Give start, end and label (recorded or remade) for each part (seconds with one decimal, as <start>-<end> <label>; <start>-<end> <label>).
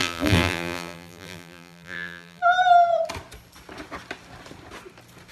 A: 0.0-2.4 remade; 2.4-5.3 recorded